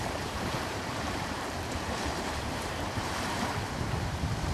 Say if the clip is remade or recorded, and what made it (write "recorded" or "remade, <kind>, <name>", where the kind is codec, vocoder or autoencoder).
remade, vocoder, BigVGAN v2